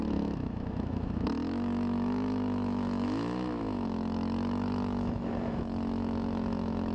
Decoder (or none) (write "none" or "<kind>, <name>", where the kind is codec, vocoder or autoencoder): autoencoder, DAC-VAE